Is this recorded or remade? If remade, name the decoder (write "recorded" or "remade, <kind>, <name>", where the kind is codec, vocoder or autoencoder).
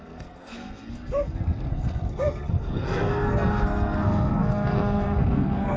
remade, codec, SNAC